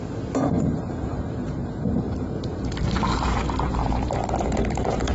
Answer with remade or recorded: remade